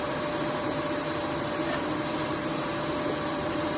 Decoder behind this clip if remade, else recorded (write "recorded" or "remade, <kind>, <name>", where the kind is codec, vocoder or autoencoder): remade, vocoder, BigVGAN v2